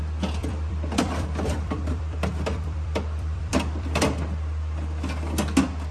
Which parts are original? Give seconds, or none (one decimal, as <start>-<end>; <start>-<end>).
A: 0.0-0.4; 3.9-5.9